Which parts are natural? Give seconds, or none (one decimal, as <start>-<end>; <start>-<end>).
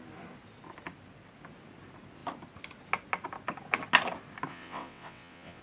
0.0-4.5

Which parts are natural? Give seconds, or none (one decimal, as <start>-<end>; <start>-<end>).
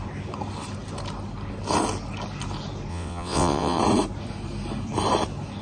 0.0-2.9; 3.8-5.6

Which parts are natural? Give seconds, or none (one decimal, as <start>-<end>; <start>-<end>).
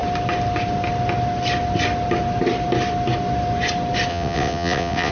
0.0-4.1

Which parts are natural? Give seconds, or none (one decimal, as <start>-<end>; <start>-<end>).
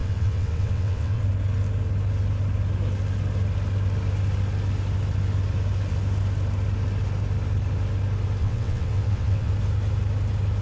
1.2-8.4; 9.5-10.6